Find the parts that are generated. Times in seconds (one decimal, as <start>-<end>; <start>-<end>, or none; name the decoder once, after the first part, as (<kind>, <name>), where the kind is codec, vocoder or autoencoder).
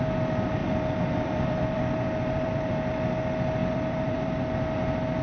0.6-2.9 (vocoder, BigVGAN v2); 3.6-4.8